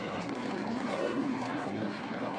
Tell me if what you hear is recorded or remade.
remade